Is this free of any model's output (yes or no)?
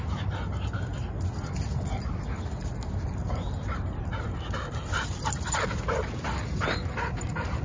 yes